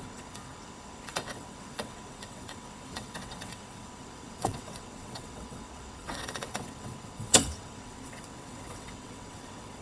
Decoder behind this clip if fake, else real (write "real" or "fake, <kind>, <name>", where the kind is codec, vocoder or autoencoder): fake, vocoder, WaveNeXt